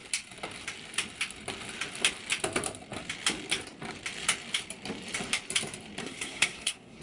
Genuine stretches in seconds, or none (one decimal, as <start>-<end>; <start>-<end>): 0.0-6.0